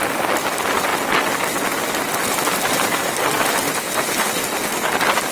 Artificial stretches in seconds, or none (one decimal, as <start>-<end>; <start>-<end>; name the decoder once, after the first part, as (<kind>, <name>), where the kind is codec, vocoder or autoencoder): none